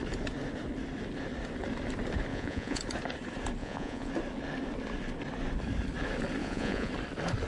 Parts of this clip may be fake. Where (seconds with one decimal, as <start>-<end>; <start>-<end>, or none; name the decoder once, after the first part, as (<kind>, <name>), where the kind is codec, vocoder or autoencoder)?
2.3-2.8 (vocoder, Vocos); 3.6-4.1; 6.4-6.9